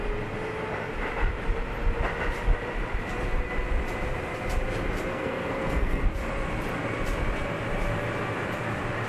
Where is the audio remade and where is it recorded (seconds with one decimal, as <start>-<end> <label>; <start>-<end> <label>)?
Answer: 0.0-5.1 recorded; 5.1-6.1 remade; 6.1-9.1 recorded